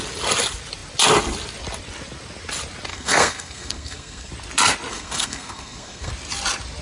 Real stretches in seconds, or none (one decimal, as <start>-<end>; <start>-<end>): 0.0-2.9; 4.3-4.9; 6.1-6.8